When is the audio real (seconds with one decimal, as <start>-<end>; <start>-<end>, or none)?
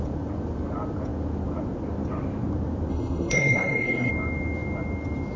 0.0-2.9; 4.1-5.4